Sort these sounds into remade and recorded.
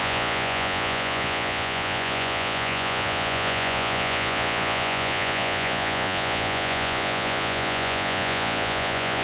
remade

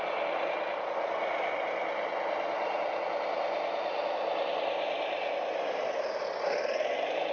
recorded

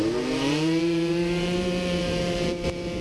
remade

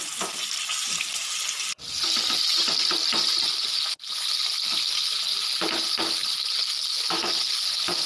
recorded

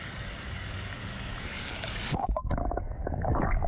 remade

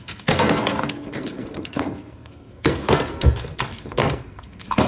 remade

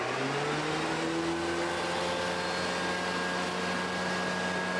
recorded